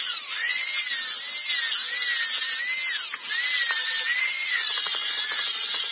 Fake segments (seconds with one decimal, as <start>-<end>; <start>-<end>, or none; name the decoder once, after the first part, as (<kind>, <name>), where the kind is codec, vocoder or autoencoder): 0.0-0.7 (vocoder, Vocos); 4.2-5.9